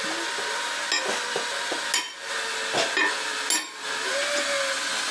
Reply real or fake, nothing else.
real